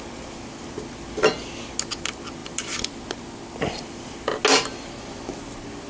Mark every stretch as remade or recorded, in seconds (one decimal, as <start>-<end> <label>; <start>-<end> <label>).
0.0-5.9 recorded